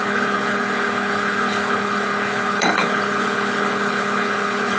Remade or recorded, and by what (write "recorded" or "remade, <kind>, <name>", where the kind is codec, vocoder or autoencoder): remade, codec, HILCodec